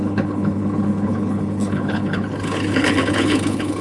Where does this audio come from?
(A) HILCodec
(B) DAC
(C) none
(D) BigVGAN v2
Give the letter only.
A